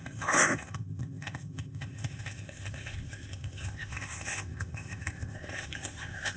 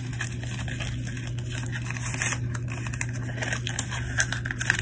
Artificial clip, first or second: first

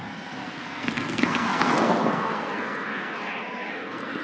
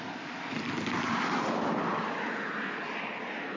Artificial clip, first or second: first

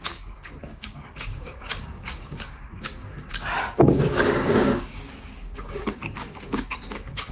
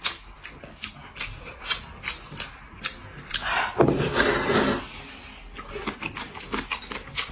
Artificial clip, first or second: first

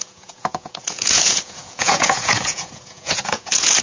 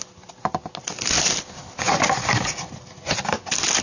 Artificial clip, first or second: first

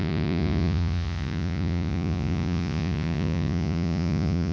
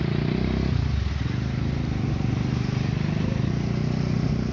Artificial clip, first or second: first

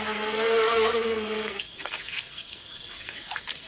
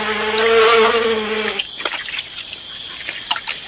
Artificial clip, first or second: first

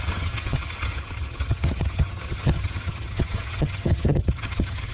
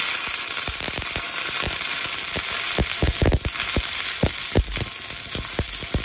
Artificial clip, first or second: first